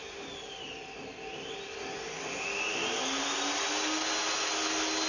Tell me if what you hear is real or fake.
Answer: real